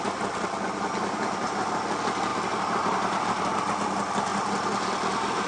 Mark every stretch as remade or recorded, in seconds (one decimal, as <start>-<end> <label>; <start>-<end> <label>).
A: 0.0-2.3 recorded; 2.3-3.5 remade; 3.5-5.5 recorded